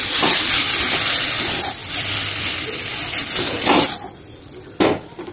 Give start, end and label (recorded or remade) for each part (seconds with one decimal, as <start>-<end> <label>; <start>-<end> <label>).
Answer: 0.0-5.3 recorded